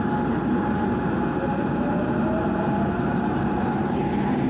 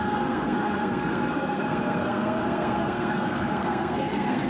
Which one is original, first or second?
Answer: first